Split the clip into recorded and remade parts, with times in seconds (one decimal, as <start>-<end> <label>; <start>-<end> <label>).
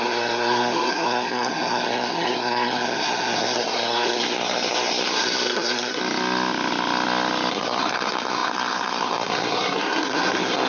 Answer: 0.0-6.0 remade; 6.0-7.5 recorded; 7.5-10.7 remade